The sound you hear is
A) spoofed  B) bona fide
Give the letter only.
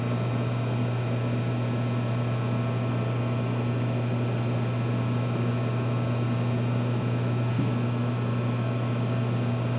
B